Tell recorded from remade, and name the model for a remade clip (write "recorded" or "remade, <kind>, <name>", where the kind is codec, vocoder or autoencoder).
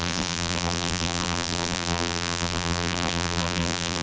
remade, vocoder, BigVGAN v2